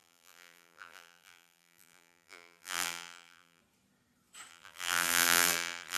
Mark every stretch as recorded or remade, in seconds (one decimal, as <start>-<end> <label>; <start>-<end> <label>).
0.0-3.6 remade; 3.6-4.5 recorded; 4.5-6.0 remade